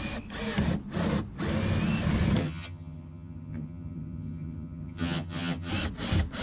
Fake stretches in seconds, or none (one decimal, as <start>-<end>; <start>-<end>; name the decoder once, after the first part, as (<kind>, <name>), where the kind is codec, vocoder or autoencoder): 2.4-5.7 (vocoder, HiFi-GAN)